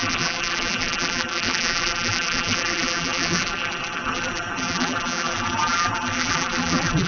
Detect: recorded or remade remade